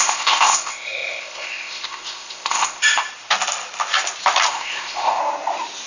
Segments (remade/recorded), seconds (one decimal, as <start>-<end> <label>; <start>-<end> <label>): 0.0-2.8 remade; 2.8-4.5 recorded; 4.5-5.2 remade; 5.2-5.9 recorded